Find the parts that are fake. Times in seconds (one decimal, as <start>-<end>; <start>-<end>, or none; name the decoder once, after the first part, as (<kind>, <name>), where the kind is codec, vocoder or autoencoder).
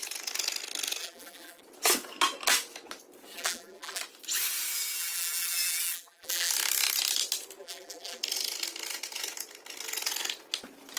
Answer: 1.0-1.6 (vocoder, BigVGAN v2); 3.3-4.0; 5.0-6.5; 7.6-8.2